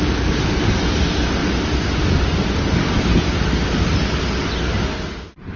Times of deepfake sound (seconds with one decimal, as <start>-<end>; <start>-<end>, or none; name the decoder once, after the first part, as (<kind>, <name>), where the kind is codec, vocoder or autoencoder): none